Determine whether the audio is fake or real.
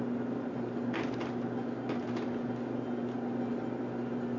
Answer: real